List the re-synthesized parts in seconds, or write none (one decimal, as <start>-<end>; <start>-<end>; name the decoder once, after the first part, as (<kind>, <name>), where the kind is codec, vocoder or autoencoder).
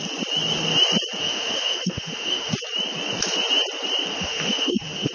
1.2-2.5 (autoencoder, DAC-VAE); 4.1-5.1